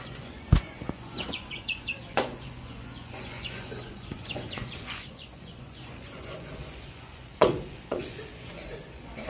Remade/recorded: remade